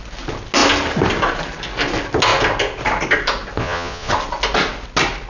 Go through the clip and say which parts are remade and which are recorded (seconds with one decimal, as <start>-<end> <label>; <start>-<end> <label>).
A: 0.0-3.6 recorded; 3.6-4.1 remade; 4.1-5.3 recorded